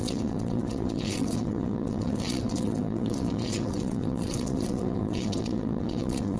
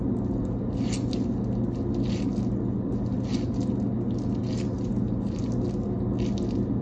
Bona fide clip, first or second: second